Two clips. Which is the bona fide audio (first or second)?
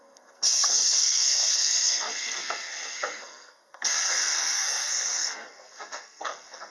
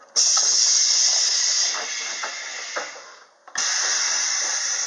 second